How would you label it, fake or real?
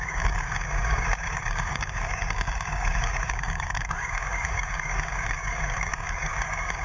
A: fake